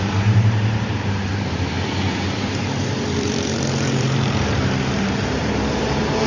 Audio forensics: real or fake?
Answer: fake